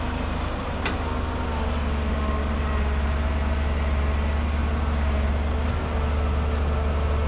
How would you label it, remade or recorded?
recorded